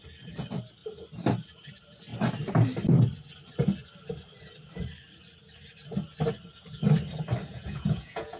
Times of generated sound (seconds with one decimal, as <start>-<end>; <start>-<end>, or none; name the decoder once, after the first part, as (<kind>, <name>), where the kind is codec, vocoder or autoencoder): 7.5-8.4 (vocoder, Vocos)